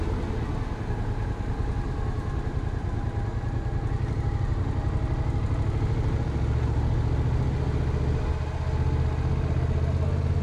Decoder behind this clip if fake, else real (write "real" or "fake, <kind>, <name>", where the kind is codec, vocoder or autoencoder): real